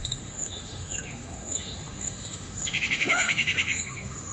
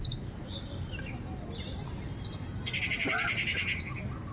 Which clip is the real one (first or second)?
second